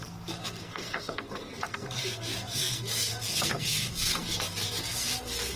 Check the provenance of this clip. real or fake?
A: fake